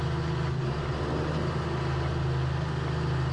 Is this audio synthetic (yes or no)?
no